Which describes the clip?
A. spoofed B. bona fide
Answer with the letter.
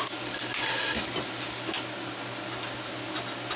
B